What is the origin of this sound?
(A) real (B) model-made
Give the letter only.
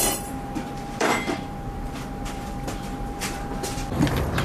B